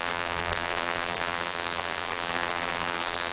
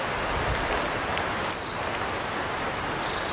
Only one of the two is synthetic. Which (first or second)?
first